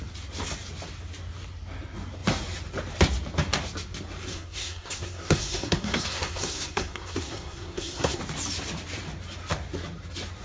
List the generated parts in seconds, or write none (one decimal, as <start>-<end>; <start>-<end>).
4.3-8.2